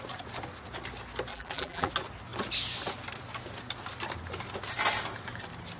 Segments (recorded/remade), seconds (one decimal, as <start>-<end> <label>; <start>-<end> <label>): 0.0-1.3 recorded; 1.3-1.9 remade; 1.9-5.8 recorded